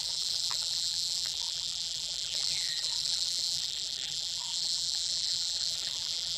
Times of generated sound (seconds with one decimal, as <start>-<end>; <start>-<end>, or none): 0.0-6.4